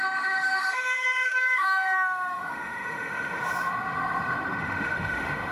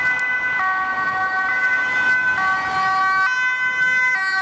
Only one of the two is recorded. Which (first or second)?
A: second